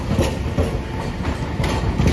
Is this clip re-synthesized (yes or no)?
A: no